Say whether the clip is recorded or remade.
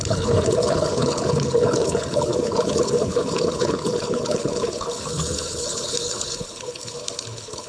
remade